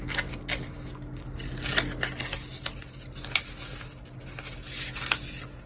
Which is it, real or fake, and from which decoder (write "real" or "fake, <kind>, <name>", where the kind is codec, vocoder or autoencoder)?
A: real